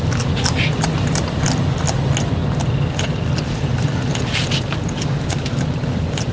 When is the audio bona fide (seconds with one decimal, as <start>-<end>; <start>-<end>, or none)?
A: 0.0-6.3